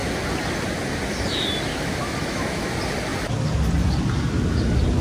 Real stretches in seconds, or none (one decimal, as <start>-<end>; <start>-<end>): 0.0-1.7; 2.7-5.0